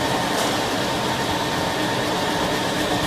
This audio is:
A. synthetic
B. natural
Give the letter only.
B